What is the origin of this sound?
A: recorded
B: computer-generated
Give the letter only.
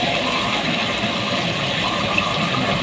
A